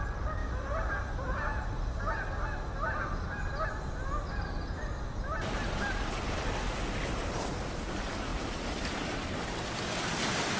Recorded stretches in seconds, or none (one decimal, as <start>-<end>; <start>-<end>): 0.0-10.6